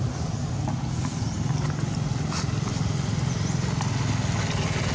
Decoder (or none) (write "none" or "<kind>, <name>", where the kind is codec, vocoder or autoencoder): none